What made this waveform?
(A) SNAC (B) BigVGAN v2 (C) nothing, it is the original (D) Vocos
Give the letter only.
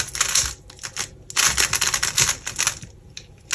C